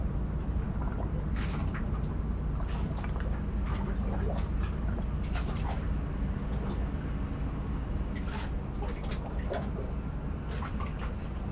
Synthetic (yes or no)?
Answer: no